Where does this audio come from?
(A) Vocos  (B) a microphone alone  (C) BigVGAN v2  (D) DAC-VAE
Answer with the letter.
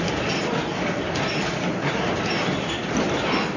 B